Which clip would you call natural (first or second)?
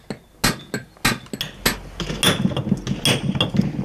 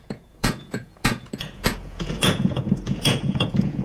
first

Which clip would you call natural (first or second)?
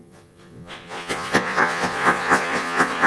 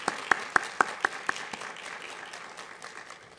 second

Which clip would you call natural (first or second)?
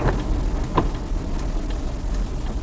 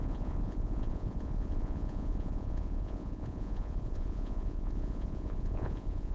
first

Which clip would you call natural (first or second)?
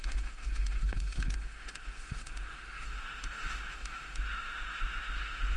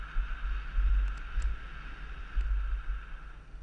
second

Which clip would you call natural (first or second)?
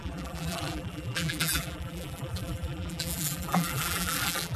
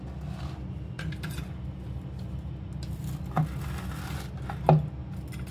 second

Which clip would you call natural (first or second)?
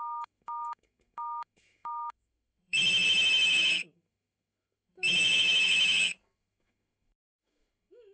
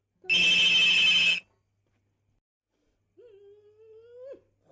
second